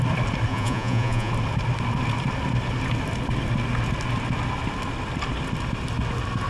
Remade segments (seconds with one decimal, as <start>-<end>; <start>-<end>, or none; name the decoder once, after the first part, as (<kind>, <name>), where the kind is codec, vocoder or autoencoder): 0.5-1.3 (vocoder, Vocos)